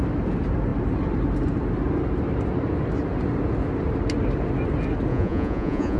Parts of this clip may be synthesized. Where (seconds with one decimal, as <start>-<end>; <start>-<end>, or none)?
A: 5.1-6.0

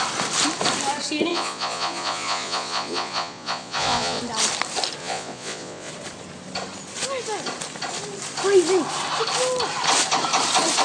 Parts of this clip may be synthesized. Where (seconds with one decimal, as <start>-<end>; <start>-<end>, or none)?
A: 1.3-4.2; 5.0-5.9

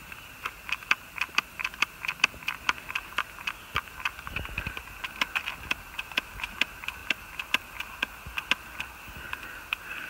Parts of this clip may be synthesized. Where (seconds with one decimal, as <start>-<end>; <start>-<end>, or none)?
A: none

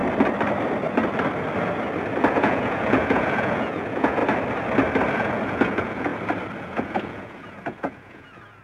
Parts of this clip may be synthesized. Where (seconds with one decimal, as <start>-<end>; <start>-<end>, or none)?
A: 2.3-4.2; 5.1-6.1; 6.6-8.6

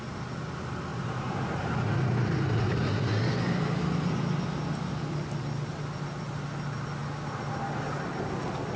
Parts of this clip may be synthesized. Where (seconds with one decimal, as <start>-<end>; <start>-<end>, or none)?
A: 0.9-3.2

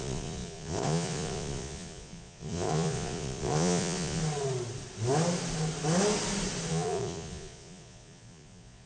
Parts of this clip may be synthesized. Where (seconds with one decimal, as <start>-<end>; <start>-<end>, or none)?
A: 0.0-4.2; 6.7-8.9